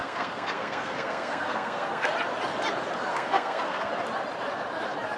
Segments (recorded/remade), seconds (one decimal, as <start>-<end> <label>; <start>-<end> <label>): 0.0-2.1 remade; 2.1-3.1 recorded; 3.1-3.9 remade; 3.9-5.2 recorded